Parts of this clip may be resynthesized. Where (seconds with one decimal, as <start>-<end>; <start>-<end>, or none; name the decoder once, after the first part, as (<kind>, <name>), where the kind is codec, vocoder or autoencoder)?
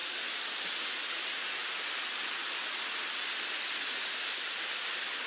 none